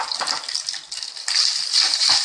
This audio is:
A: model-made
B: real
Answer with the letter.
B